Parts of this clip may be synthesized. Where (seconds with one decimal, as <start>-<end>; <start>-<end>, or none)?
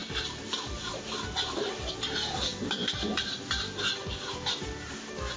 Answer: none